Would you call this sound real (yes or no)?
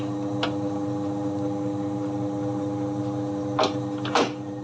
yes